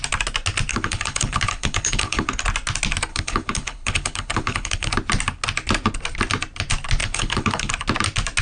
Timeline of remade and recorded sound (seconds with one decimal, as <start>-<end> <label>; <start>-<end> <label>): 0.0-0.7 recorded; 0.7-2.3 remade; 2.3-3.1 recorded; 3.1-4.9 remade; 4.9-7.0 recorded; 7.0-7.7 remade; 7.7-8.4 recorded